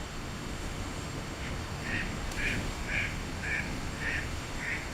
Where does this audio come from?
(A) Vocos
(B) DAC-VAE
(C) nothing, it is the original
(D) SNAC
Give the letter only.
B